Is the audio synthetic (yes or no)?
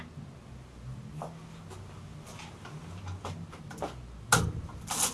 no